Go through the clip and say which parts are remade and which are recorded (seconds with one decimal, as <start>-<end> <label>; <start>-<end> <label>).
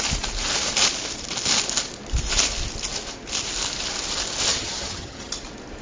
0.0-4.5 recorded; 4.5-5.3 remade; 5.3-5.8 recorded